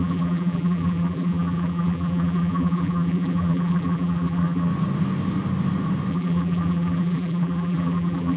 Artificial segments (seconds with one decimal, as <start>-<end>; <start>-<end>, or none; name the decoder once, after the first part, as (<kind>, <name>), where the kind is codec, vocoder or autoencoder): 0.0-4.7 (vocoder, BigVGAN v2); 6.1-8.4